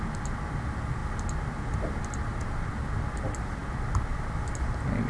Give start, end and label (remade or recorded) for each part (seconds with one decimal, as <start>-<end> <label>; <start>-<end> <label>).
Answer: 0.0-5.1 recorded